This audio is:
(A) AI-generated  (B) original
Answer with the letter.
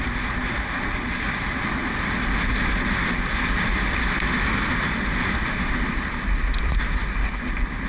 A